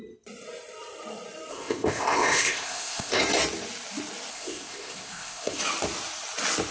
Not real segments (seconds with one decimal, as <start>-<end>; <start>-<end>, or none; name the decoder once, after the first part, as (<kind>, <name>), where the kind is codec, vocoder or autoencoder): 1.5-3.2 (codec, ZipCodec); 4.3-5.6